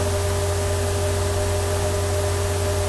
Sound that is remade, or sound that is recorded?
recorded